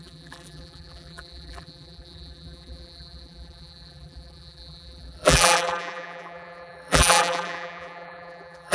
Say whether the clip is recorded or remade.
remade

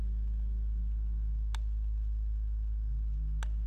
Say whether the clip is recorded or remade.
recorded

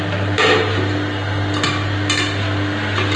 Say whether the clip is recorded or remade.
recorded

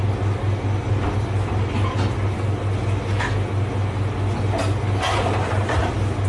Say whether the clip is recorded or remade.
recorded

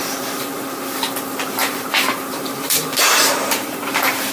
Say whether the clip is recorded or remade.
remade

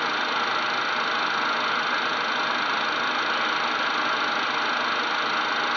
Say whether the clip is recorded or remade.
recorded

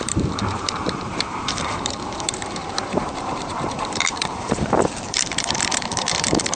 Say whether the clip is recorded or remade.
remade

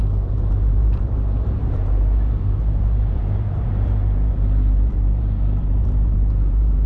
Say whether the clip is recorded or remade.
remade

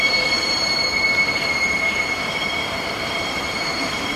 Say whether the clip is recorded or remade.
remade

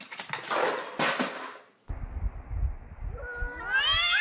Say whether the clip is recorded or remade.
recorded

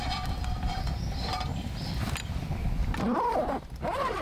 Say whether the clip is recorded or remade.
remade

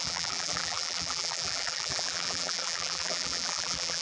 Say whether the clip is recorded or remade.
remade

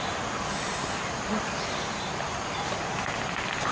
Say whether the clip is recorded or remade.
recorded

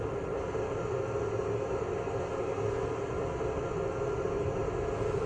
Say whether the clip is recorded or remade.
recorded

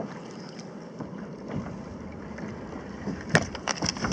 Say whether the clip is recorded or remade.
recorded